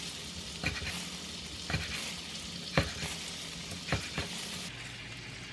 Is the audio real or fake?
real